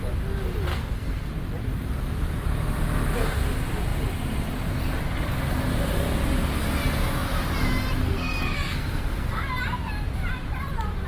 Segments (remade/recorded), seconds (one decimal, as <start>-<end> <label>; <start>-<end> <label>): 0.0-0.7 recorded; 0.7-1.3 remade; 1.3-8.0 recorded; 8.0-9.4 remade; 9.4-11.1 recorded